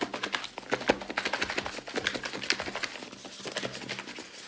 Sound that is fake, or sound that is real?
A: real